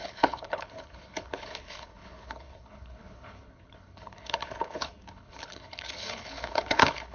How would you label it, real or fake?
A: fake